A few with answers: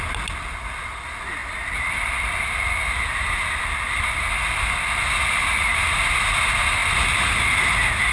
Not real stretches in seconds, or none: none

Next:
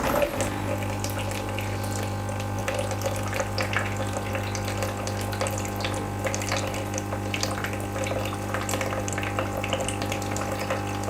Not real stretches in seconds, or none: 2.6-4.3 (vocoder, BigVGAN v2)

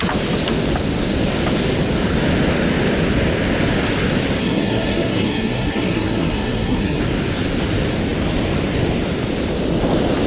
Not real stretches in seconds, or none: 4.4-7.0 (codec, SNAC)

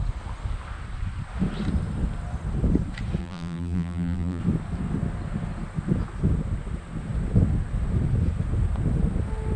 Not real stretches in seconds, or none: 3.2-4.4 (vocoder, BigVGAN v2)

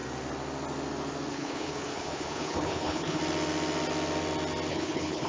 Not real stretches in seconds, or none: 1.3-3.2 (codec, HILCodec); 4.7-5.3

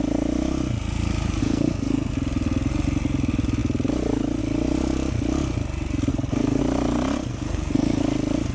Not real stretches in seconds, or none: 1.4-2.1 (codec, SNAC); 6.1-6.6; 7.3-8.0

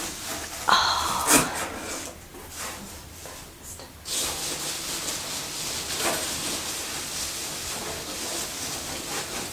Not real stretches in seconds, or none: none

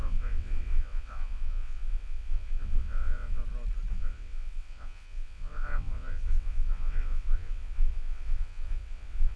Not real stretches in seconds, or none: 0.0-3.4 (vocoder, WaveNeXt); 3.9-9.4